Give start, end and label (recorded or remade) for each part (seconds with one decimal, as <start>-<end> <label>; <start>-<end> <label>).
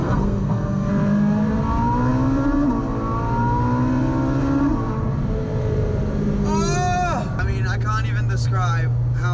0.0-0.9 remade; 0.9-9.3 recorded